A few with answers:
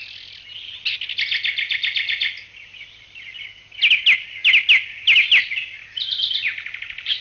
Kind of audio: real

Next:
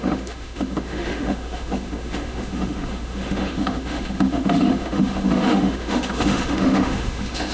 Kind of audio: fake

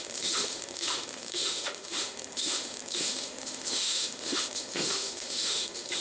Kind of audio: fake